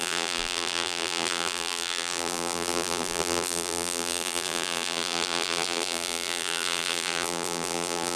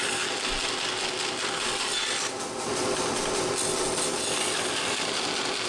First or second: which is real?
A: second